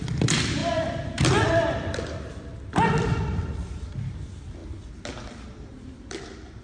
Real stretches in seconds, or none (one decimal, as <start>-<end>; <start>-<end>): 4.6-6.1